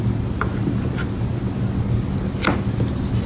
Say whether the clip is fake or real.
real